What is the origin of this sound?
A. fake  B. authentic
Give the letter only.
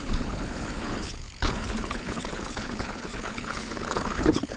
A